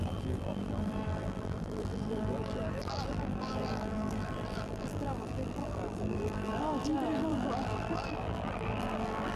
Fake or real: fake